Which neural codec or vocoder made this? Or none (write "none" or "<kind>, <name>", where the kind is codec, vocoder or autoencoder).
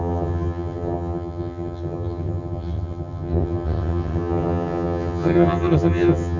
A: vocoder, HiFi-GAN